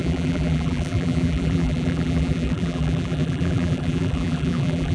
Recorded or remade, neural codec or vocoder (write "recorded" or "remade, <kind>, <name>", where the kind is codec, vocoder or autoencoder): remade, vocoder, BigVGAN v2